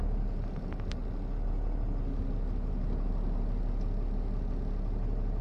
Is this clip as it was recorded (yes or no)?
yes